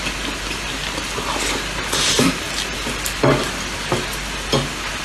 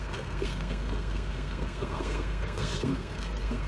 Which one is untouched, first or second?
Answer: first